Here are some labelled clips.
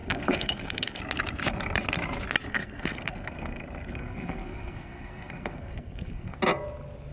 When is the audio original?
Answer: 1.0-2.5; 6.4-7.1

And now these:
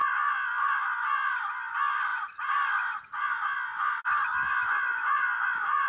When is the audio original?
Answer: 0.0-5.9

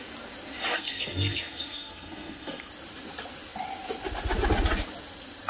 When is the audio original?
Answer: 0.0-0.7; 2.7-5.5

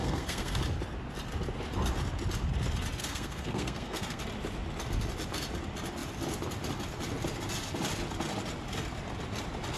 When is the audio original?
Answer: 0.6-3.0; 4.2-9.8